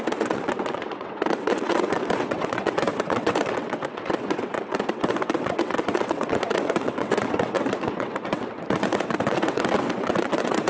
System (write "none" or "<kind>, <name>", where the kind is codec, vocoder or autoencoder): vocoder, WaveNeXt